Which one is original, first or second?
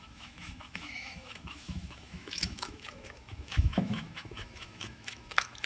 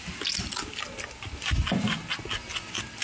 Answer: second